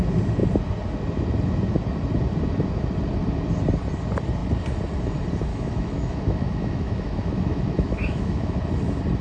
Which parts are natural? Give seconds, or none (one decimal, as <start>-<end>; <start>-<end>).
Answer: 0.0-5.5; 8.6-9.2